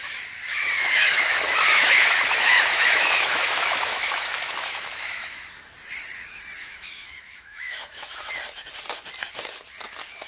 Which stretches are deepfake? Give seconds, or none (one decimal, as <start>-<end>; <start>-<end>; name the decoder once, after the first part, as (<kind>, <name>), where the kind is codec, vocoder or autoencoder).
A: 0.5-5.6 (autoencoder, DAC-VAE); 6.6-8.3